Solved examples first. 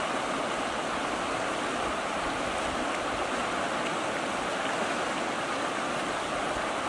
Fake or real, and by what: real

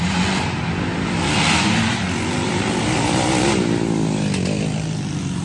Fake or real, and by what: real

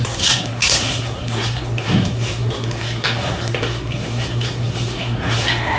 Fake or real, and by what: fake, codec, SNAC